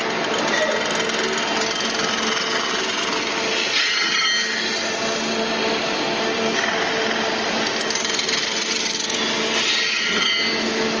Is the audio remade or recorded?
recorded